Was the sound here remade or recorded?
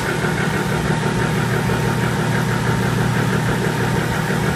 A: recorded